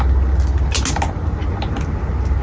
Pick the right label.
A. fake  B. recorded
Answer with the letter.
B